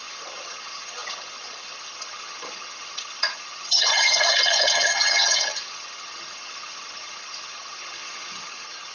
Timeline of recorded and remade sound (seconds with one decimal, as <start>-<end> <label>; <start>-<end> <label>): 0.0-8.9 remade